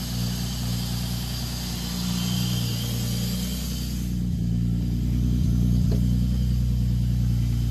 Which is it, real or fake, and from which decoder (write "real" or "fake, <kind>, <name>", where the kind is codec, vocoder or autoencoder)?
real